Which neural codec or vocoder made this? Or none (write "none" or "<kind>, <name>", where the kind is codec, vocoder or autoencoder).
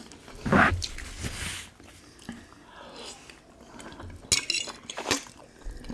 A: none